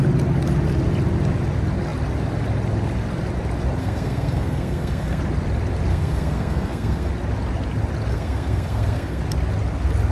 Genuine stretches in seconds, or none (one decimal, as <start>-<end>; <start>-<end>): 0.0-3.8; 5.2-5.9; 7.1-8.1; 9.2-10.1